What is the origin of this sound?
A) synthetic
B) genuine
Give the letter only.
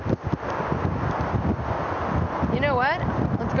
B